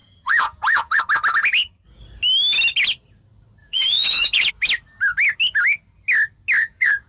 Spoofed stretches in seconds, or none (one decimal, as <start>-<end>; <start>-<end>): 0.0-1.0; 3.6-4.5; 6.6-7.1